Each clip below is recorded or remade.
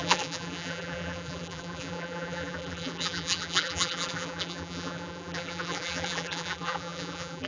remade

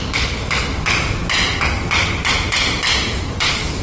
recorded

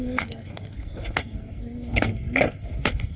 remade